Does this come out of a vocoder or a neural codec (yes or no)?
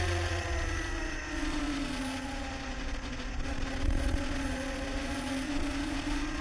yes